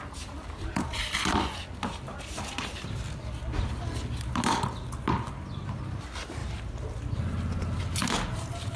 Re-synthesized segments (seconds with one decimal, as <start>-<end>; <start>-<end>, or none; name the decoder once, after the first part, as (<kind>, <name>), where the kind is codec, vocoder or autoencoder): none